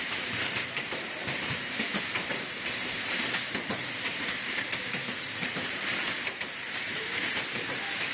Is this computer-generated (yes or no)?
yes